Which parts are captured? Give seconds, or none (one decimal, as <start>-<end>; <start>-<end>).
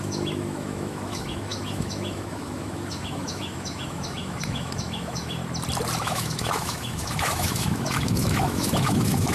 5.4-6.0